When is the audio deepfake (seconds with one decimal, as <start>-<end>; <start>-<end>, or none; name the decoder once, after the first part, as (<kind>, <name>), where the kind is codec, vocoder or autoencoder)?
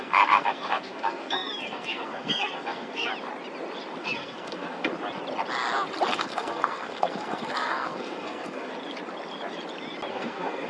0.0-3.1 (codec, SNAC); 4.0-4.9; 6.1-8.7; 10.1-10.7